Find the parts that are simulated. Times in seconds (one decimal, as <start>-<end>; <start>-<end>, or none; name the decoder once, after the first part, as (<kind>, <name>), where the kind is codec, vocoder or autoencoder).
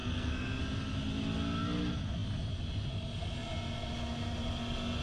0.0-0.6 (codec, SNAC)